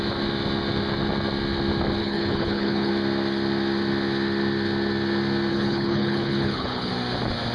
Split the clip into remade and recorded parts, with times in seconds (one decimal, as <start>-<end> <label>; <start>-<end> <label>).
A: 0.0-2.0 recorded; 2.0-2.9 remade; 2.9-5.5 recorded; 5.5-6.9 remade; 6.9-7.5 recorded